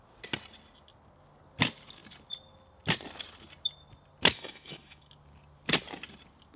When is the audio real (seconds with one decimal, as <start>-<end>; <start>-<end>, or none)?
0.0-4.3; 5.1-6.6